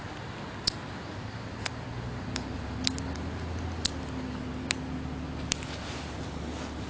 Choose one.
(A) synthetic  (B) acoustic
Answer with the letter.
B